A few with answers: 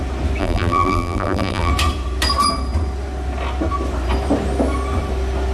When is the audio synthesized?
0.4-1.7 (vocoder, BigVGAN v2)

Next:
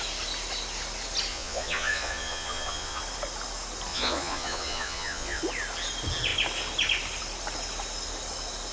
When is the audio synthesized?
1.3-3.0 (vocoder, Vocos); 3.9-5.4

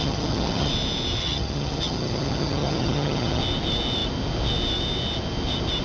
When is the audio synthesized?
0.0-0.7 (vocoder, HiFi-GAN); 1.2-3.4

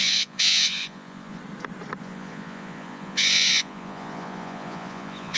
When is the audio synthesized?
0.0-1.4 (vocoder, Vocos); 2.0-5.4

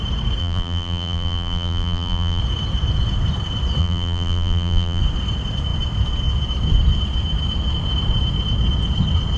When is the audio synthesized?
0.4-2.4 (vocoder, BigVGAN v2); 3.8-5.0